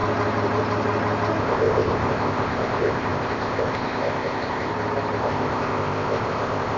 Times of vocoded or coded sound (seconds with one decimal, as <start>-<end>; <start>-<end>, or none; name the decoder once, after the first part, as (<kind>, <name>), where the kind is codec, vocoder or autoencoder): 1.4-4.7 (codec, ZipCodec); 5.2-6.8